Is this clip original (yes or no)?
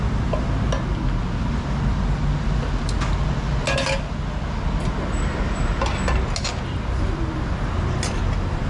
yes